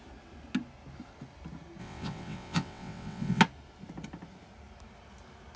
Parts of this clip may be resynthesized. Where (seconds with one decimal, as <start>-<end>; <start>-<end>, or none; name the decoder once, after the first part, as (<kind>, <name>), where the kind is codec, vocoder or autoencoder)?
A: 1.8-3.4 (vocoder, WaveNeXt)

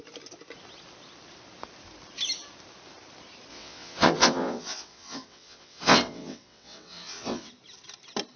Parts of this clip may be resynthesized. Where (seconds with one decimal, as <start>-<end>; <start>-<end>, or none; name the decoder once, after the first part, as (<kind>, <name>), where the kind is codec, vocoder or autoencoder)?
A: 3.5-7.5 (vocoder, WaveNeXt)

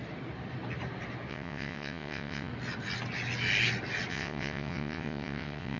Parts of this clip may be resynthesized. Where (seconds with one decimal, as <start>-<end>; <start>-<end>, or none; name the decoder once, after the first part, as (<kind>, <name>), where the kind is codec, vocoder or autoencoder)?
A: 1.3-2.5 (vocoder, WaveNeXt); 4.1-5.8

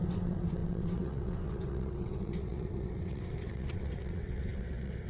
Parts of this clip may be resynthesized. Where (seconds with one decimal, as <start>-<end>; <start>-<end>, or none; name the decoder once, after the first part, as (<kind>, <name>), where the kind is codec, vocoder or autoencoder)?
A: 0.0-5.1 (vocoder, WaveNeXt)

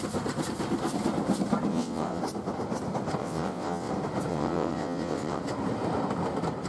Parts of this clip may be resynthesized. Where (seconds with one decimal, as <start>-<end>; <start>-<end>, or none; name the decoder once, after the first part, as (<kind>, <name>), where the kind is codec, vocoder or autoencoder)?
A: 1.7-2.2 (vocoder, WaveNeXt); 3.2-3.9; 4.3-5.4

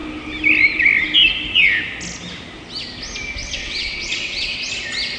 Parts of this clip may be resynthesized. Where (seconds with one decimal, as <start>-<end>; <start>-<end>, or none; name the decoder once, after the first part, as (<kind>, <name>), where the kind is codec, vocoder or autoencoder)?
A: 3.4-4.7 (vocoder, WaveNeXt)